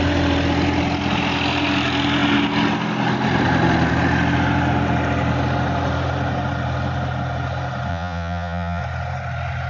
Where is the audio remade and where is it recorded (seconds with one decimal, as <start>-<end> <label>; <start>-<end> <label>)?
0.0-7.9 recorded; 7.9-8.8 remade; 8.8-9.7 recorded

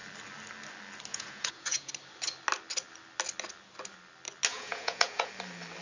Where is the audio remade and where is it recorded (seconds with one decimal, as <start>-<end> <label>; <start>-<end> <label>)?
0.0-1.1 recorded; 1.1-1.9 remade; 1.9-4.5 recorded; 4.5-5.3 remade; 5.3-5.8 recorded

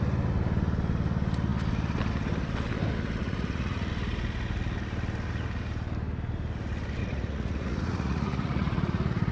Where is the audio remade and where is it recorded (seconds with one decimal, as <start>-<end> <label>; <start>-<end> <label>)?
0.0-3.2 recorded; 3.2-3.9 remade; 3.9-7.0 recorded; 7.0-9.3 remade

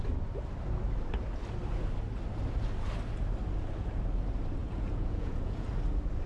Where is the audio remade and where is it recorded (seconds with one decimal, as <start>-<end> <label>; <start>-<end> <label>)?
0.0-4.6 recorded; 4.6-5.7 remade; 5.7-6.3 recorded

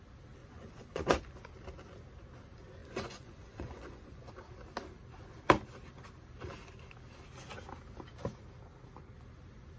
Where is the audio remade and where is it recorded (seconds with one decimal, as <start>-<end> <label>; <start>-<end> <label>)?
0.0-0.4 recorded; 0.4-1.2 remade; 1.2-2.8 recorded; 2.8-4.3 remade; 4.3-9.8 recorded

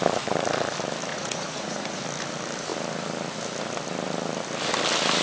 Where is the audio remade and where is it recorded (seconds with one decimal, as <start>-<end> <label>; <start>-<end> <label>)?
0.0-1.1 recorded; 1.1-2.0 remade; 2.0-5.2 recorded

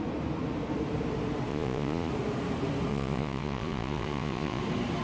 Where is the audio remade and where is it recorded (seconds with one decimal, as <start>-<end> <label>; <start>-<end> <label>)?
0.0-1.5 recorded; 1.5-2.1 remade; 2.1-2.9 recorded; 2.9-4.6 remade; 4.6-5.0 recorded